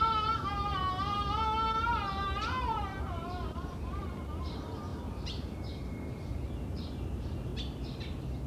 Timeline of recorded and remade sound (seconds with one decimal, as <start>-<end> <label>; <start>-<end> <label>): 0.0-7.5 remade; 7.5-8.5 recorded